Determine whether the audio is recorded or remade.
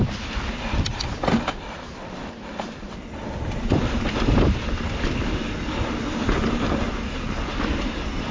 recorded